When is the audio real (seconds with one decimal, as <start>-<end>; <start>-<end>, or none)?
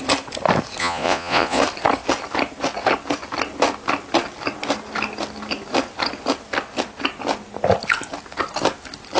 0.0-0.8; 1.6-9.2